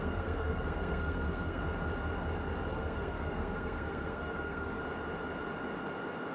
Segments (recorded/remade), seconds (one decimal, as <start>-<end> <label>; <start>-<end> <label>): 0.0-1.6 remade; 1.6-2.7 recorded; 2.7-4.8 remade; 4.8-6.3 recorded